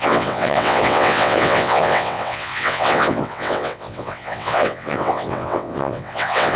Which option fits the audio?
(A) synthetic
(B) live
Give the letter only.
A